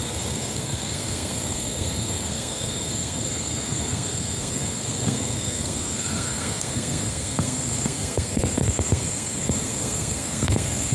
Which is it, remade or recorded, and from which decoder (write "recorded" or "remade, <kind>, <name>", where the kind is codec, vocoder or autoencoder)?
remade, codec, SNAC